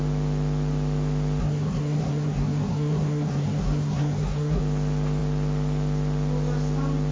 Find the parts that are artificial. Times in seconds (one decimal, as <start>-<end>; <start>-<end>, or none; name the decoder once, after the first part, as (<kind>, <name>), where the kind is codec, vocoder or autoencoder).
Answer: 1.4-4.6 (codec, SNAC)